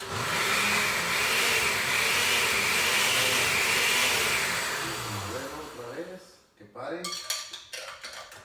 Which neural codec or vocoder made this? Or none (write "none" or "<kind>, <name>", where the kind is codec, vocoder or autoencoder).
none